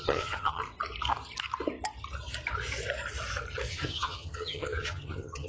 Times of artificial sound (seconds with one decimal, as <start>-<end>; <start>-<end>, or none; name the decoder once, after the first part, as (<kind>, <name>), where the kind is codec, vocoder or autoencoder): 0.0-0.6 (vocoder, HiFi-GAN); 3.7-5.5